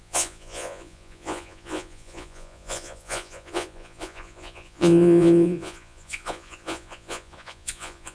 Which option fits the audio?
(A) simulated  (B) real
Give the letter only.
A